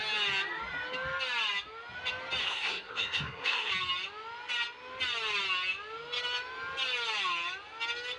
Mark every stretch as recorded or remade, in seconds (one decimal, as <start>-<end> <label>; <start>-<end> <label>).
0.0-2.4 recorded; 2.4-3.7 remade; 3.7-8.2 recorded